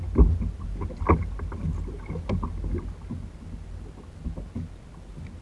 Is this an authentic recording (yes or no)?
yes